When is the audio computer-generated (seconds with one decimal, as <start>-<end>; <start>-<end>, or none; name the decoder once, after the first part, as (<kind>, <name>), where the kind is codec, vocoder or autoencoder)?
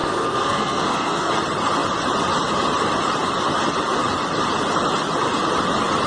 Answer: 0.0-1.3 (codec, SNAC)